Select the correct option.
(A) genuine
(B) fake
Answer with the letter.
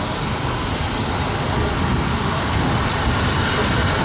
A